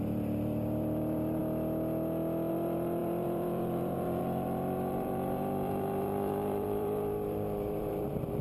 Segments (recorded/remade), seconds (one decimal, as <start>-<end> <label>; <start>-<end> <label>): 0.0-1.4 remade; 1.4-2.5 recorded; 2.5-8.4 remade